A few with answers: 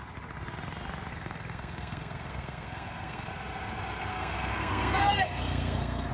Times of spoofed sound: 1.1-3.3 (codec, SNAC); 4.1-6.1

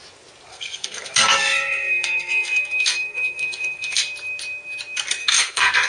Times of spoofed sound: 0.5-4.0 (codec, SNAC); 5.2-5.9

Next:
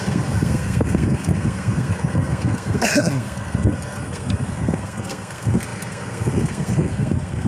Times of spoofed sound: 0.0-7.5 (codec, SNAC)

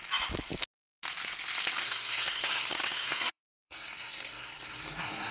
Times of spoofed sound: 1.8-5.3 (codec, SNAC)

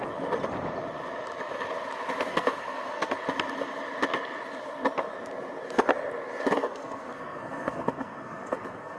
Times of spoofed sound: 2.3-3.1 (codec, SNAC); 6.6-9.0

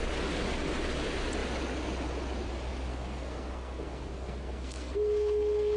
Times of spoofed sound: 2.9-5.8 (codec, SNAC)

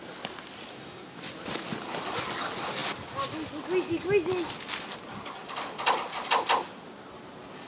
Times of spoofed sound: 0.7-1.2 (codec, SNAC)